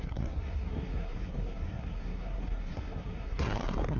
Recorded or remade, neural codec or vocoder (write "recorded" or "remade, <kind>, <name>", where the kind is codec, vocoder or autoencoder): remade, codec, SNAC